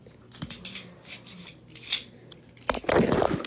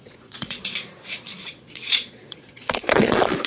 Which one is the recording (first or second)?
first